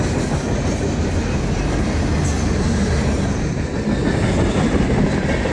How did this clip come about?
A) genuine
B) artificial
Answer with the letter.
A